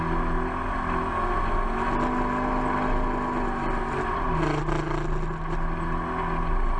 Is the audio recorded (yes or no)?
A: yes